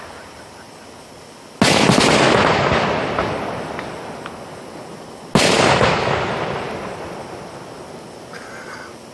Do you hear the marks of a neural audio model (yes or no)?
no